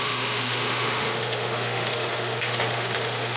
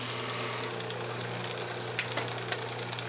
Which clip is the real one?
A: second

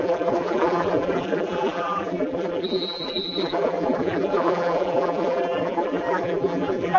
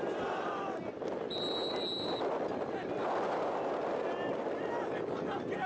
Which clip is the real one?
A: second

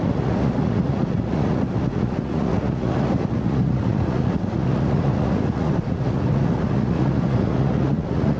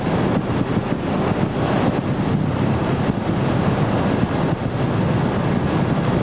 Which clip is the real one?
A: second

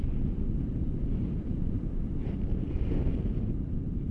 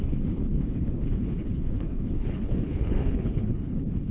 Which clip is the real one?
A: first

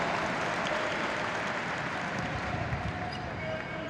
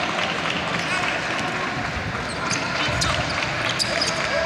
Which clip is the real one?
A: second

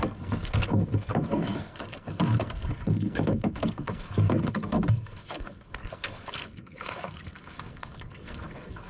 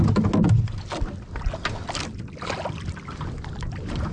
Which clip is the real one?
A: second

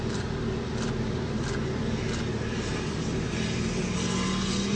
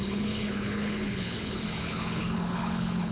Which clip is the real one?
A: first